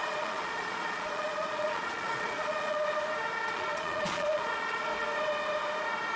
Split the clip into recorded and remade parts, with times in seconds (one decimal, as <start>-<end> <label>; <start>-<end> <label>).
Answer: 0.0-2.9 remade; 2.9-3.5 recorded; 3.5-4.9 remade; 4.9-6.2 recorded